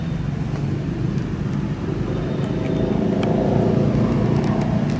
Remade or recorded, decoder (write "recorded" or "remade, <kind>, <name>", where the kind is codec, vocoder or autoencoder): recorded